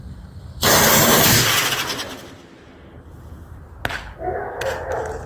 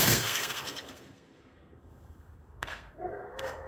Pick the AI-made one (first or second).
second